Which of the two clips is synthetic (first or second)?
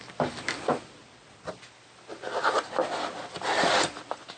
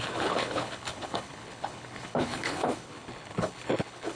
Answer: second